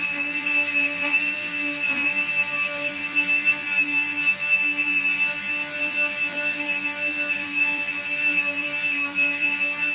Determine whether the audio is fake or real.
fake